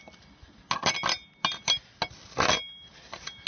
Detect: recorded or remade recorded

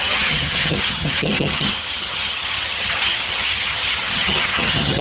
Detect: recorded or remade remade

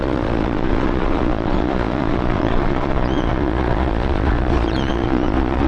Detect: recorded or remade remade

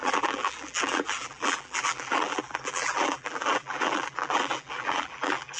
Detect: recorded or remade remade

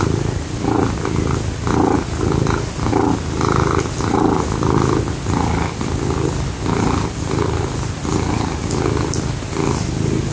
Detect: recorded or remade recorded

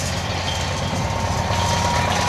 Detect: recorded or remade recorded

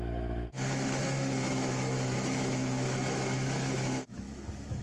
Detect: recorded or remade remade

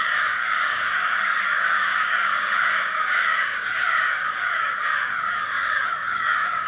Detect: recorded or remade remade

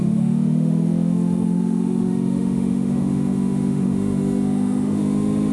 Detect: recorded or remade remade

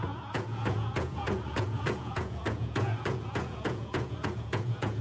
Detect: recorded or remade remade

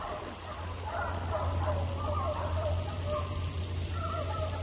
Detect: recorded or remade recorded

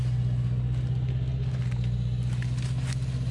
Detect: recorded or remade recorded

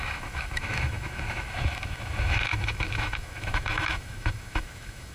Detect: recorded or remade remade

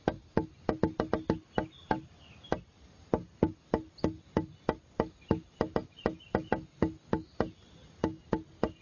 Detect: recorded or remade recorded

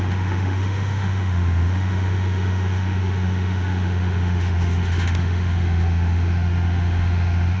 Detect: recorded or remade remade